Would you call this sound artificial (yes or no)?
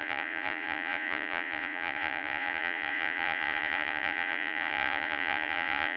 yes